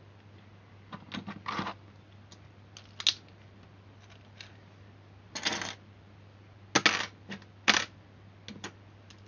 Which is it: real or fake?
real